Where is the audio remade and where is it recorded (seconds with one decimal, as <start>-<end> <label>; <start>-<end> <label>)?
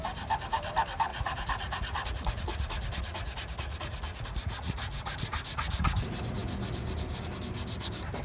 0.0-1.1 recorded; 1.1-6.0 remade; 6.0-8.2 recorded